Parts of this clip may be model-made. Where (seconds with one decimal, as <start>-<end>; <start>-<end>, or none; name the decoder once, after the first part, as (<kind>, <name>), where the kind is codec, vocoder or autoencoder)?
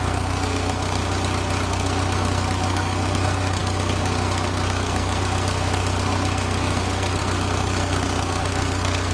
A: 0.0-1.0 (codec, SNAC); 1.7-9.1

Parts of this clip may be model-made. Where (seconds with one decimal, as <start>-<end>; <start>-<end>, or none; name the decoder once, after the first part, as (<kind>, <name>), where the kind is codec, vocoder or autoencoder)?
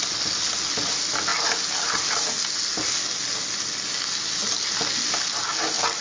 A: none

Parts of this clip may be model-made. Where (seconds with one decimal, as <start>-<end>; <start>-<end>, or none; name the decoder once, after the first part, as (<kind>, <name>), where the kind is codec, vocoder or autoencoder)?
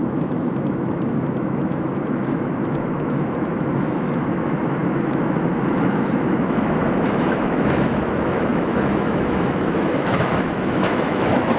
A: 0.0-11.6 (autoencoder, DAC-VAE)